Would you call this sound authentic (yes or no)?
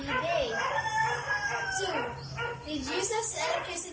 yes